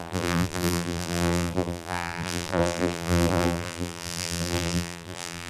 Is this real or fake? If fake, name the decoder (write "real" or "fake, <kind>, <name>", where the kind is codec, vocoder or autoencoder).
fake, vocoder, BigVGAN v2